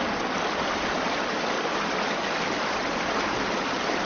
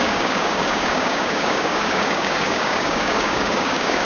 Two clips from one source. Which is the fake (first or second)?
second